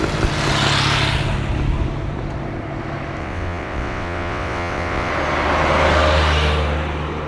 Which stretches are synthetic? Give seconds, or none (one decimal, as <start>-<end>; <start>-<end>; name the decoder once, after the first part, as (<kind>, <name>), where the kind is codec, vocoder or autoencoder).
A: 3.2-5.1 (vocoder, WaveNeXt)

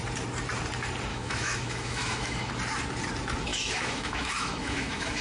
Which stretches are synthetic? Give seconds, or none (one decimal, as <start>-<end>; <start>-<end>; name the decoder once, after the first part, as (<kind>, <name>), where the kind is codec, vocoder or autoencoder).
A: 1.1-2.5 (autoencoder, DAC-VAE); 3.5-5.2

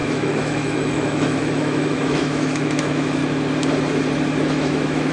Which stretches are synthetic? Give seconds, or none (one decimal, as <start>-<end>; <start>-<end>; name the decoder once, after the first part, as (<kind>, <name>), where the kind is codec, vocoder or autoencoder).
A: 0.0-3.2 (autoencoder, DAC-VAE); 4.5-5.1